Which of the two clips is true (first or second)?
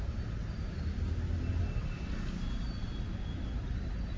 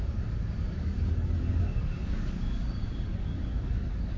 first